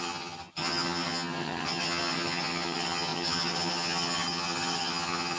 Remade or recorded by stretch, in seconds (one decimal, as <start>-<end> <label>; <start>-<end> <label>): 0.0-5.4 remade